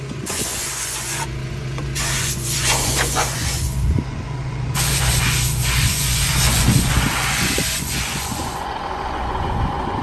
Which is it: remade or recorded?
remade